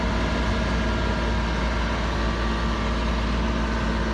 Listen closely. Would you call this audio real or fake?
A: real